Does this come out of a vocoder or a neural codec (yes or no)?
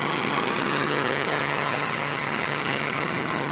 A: yes